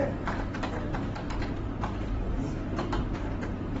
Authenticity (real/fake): fake